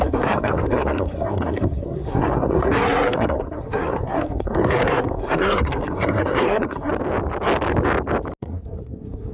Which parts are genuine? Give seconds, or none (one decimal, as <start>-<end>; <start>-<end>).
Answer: 6.9-8.4

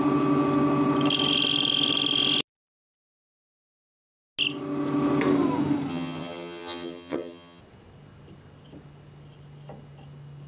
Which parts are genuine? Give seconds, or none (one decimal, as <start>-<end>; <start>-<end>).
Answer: 0.0-5.9; 7.6-10.5

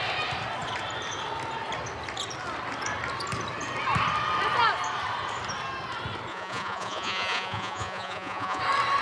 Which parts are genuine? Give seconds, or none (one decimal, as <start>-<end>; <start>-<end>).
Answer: 0.0-6.3; 8.6-9.0

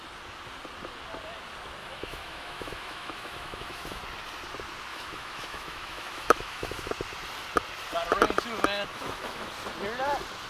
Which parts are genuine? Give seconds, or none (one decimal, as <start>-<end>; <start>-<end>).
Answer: 0.0-1.8; 4.0-4.9; 6.9-8.9; 9.5-10.5

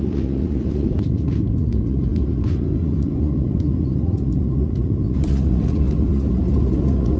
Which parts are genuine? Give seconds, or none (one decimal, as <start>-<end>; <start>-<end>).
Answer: none

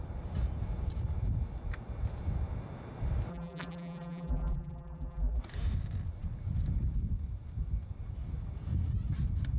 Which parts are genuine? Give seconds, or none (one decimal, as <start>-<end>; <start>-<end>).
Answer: 0.0-3.3; 5.4-9.6